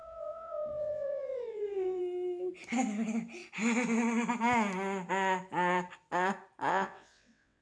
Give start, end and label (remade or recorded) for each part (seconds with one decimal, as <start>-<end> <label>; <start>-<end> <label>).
0.0-2.0 remade; 2.0-6.7 recorded; 6.7-7.6 remade